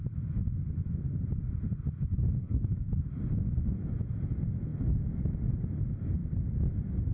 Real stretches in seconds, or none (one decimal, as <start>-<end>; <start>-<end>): 0.0-2.4; 2.9-7.1